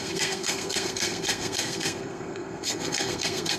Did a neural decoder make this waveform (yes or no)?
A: yes